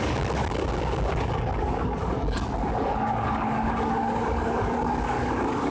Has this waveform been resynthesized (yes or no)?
yes